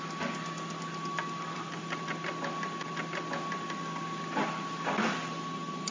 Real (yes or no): yes